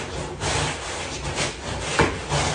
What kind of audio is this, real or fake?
real